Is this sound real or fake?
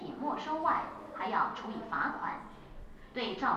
real